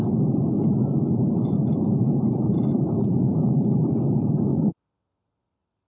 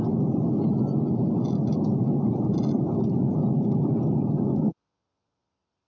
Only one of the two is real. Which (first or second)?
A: second